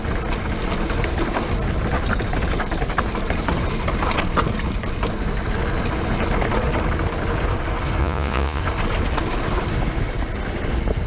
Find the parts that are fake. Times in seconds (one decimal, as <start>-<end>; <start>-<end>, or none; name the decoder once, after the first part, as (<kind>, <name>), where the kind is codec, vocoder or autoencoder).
8.0-8.6 (vocoder, Vocos)